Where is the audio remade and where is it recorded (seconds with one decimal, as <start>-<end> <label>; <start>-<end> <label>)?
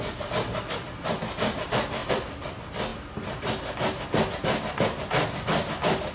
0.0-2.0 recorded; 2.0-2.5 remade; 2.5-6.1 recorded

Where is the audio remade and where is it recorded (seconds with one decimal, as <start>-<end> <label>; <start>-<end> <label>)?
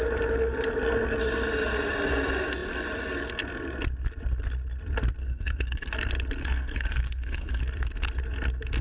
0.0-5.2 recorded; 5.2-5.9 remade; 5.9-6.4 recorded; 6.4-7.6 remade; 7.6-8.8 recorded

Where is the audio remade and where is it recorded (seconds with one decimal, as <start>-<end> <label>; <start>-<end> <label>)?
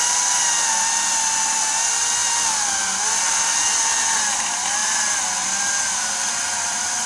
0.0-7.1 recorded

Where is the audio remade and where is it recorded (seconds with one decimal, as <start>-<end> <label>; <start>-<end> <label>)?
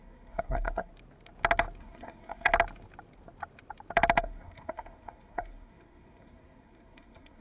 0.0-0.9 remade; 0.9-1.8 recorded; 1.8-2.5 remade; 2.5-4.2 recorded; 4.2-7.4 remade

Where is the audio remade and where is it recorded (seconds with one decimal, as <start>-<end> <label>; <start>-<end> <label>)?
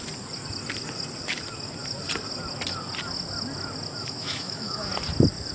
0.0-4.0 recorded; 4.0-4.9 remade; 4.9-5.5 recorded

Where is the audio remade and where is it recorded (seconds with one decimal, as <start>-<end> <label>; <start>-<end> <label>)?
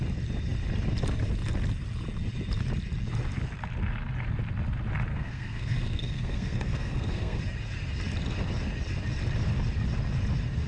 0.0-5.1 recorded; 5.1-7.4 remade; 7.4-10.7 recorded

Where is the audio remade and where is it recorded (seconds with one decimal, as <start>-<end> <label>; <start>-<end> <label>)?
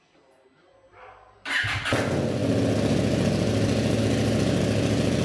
0.0-5.2 recorded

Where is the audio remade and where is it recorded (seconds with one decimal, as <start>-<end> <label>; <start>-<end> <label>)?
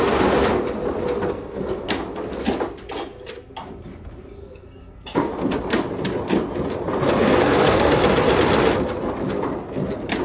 0.0-1.2 recorded; 1.2-1.9 remade; 1.9-4.4 recorded; 4.4-5.3 remade; 5.3-7.2 recorded; 7.2-7.9 remade; 7.9-10.2 recorded